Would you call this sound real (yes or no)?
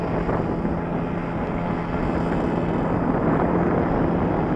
yes